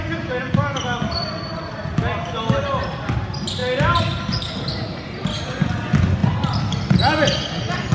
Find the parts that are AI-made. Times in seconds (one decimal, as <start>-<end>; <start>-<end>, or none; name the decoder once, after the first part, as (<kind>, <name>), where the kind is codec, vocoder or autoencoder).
0.7-2.1 (vocoder, BigVGAN v2)